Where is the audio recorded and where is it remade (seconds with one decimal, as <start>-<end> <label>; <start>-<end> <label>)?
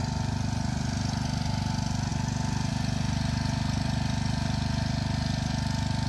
0.0-6.1 recorded